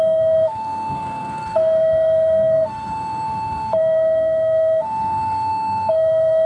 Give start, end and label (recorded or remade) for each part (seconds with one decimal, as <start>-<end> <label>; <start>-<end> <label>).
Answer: 0.0-6.5 remade